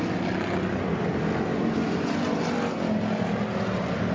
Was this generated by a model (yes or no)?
no